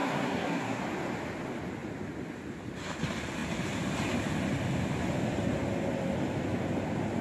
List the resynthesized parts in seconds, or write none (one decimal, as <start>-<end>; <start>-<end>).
0.0-0.8